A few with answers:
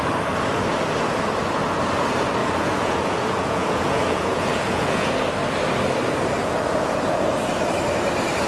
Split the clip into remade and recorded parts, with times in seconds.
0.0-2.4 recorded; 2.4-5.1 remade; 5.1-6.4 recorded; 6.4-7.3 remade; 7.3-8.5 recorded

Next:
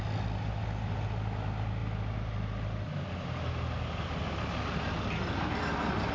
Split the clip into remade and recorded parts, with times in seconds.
0.0-6.1 recorded

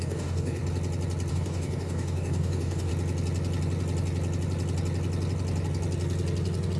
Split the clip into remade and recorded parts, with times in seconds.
0.0-0.6 remade; 0.6-1.3 recorded; 1.3-2.9 remade; 2.9-6.8 recorded

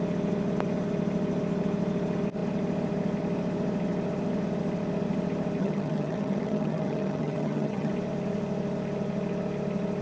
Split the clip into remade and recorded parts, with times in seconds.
0.0-5.6 recorded; 5.6-7.9 remade; 7.9-10.0 recorded

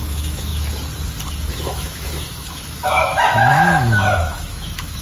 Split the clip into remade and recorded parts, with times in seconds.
0.0-0.5 remade; 0.5-1.5 recorded; 1.5-5.0 remade

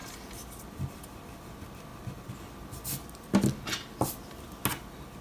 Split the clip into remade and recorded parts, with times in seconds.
0.0-5.2 recorded

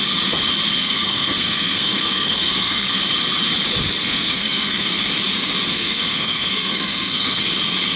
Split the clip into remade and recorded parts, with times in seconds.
0.0-0.8 recorded; 0.8-3.0 remade; 3.0-4.0 recorded; 4.0-5.1 remade; 5.1-5.7 recorded; 5.7-7.4 remade; 7.4-8.0 recorded